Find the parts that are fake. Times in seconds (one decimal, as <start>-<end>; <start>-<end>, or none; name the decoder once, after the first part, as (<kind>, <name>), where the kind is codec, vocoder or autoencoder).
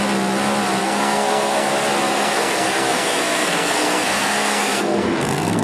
0.8-1.7 (codec, SNAC); 2.1-5.6